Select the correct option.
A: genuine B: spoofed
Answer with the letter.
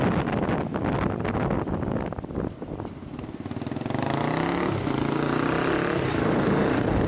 A